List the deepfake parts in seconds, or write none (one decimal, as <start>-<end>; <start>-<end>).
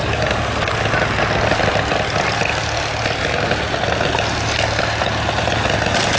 none